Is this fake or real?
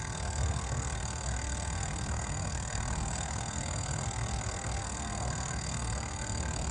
fake